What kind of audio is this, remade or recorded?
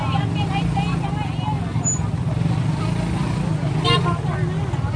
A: recorded